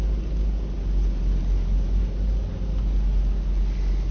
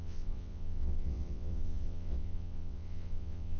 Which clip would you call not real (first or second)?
second